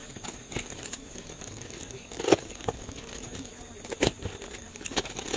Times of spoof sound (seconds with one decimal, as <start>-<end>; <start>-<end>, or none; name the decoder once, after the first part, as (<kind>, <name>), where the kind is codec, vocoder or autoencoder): 0.0-3.5 (codec, DAC); 4.5-5.4